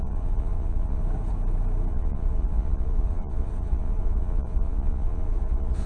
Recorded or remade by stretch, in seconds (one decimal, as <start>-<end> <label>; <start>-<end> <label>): 0.0-1.0 remade; 1.0-1.9 recorded; 1.9-5.9 remade